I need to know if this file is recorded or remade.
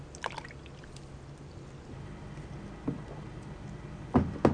recorded